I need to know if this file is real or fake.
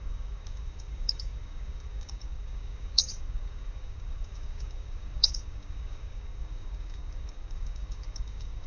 fake